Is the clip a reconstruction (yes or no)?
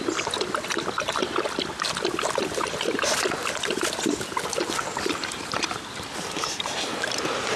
no